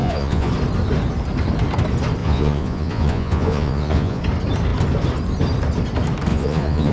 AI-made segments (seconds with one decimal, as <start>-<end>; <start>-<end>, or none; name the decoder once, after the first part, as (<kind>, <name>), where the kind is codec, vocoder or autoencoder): 0.0-0.5 (vocoder, Vocos); 2.2-4.2; 6.3-6.9